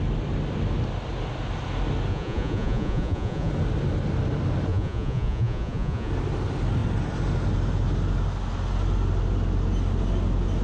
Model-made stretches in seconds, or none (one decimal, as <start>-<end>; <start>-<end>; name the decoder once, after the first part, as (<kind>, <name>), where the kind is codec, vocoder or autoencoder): 2.1-3.5 (vocoder, Vocos); 4.7-6.1